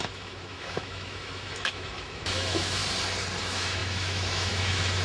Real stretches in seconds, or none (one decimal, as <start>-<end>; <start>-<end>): 2.8-3.4